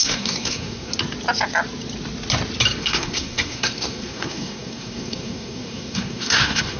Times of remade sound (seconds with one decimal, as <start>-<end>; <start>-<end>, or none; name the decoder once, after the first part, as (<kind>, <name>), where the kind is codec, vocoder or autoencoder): 0.0-0.9 (codec, SNAC); 2.8-6.8